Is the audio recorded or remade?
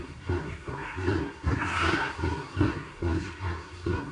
remade